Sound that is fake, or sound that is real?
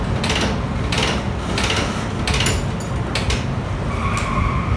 real